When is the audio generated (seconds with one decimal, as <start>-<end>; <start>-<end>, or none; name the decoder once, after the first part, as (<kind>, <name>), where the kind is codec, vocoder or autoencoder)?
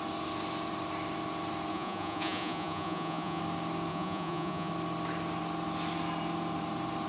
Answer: 1.7-3.4 (vocoder, Vocos); 3.9-4.7